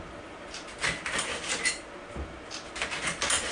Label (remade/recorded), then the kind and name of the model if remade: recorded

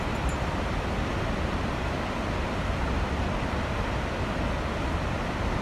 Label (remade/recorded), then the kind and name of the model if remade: recorded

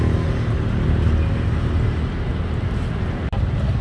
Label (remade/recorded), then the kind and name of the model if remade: recorded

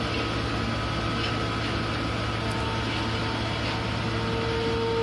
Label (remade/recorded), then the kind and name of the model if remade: recorded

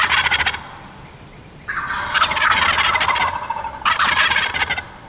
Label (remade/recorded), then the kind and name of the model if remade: recorded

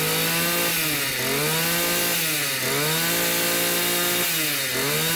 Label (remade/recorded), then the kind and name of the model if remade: recorded